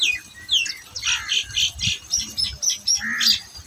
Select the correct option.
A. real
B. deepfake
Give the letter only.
A